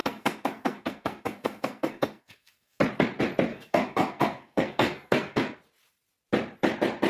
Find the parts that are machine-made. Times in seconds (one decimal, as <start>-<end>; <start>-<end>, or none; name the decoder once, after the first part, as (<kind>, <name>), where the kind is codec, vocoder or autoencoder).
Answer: 0.0-2.8 (codec, SNAC); 3.5-5.6